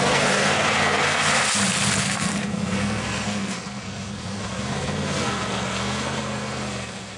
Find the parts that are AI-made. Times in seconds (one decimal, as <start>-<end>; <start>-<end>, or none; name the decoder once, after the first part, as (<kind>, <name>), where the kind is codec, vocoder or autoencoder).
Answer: 0.0-1.2 (codec, SNAC); 2.0-7.2